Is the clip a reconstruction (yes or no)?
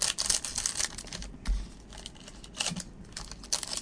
no